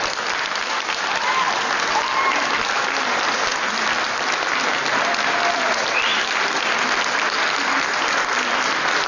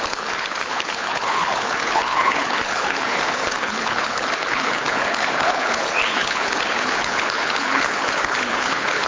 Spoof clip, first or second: second